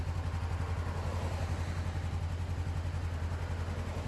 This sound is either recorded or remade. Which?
recorded